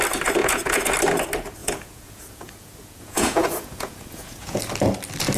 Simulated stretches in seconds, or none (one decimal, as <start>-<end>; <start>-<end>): 0.4-0.9; 1.6-4.6